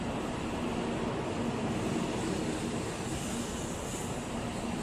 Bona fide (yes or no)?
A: yes